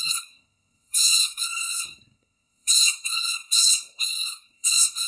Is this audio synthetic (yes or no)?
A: yes